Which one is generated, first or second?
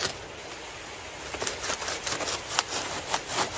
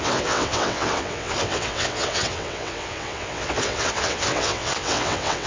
second